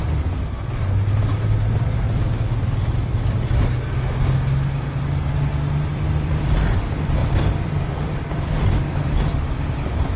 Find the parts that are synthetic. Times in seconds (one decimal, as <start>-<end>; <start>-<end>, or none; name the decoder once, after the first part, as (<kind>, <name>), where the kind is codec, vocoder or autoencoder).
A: 5.9-6.7 (vocoder, BigVGAN v2); 7.2-8.7